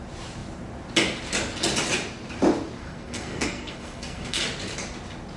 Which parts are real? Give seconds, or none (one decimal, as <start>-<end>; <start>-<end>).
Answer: 0.0-2.8; 4.4-5.4